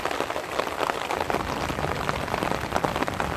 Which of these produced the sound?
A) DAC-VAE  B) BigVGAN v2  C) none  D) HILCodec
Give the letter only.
C